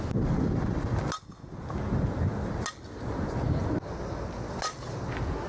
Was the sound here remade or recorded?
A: recorded